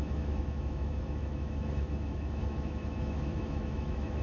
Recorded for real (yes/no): no